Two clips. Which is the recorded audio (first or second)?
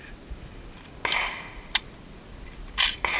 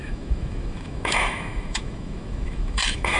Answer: first